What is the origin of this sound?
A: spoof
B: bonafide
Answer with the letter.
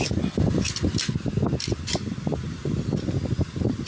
B